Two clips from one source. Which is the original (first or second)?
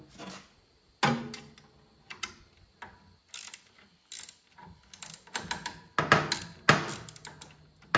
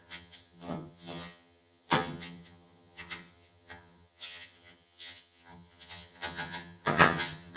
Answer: first